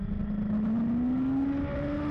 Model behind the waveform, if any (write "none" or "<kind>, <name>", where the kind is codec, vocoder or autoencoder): none